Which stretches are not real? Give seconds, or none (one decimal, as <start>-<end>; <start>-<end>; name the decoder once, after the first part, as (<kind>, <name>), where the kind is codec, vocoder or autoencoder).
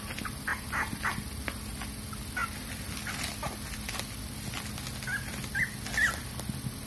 none